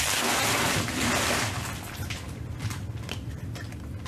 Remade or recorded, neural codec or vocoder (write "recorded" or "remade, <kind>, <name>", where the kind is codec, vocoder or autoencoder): recorded